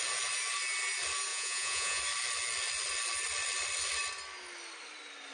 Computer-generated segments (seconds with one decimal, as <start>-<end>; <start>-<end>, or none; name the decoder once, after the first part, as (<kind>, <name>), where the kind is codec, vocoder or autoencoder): 1.3-2.0 (vocoder, Vocos)